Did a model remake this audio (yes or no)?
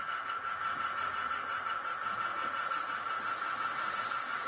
yes